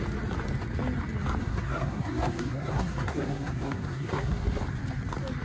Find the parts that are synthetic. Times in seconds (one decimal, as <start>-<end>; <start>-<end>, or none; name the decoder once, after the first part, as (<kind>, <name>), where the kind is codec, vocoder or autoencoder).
1.4-4.6 (codec, SNAC)